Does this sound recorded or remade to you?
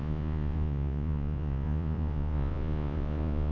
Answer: remade